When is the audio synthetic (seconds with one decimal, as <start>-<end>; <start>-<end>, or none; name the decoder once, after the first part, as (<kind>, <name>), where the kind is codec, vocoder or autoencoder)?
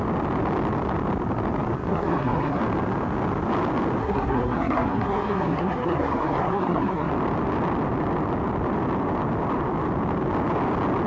1.9-2.6 (codec, SNAC); 4.0-7.1